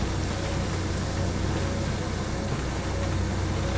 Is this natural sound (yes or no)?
yes